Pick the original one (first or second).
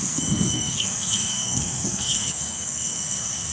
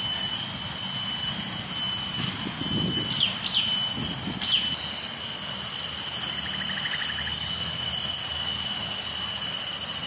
second